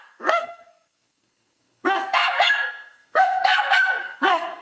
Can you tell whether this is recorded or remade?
remade